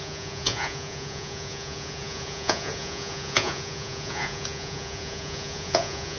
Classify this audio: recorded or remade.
remade